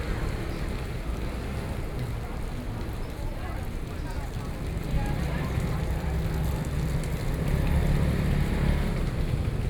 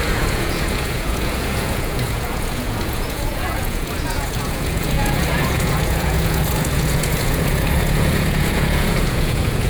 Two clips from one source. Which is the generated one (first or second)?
second